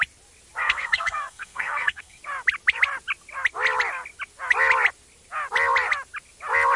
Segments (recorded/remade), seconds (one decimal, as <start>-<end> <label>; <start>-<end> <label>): 0.0-0.6 recorded; 0.6-2.2 remade; 2.2-6.8 recorded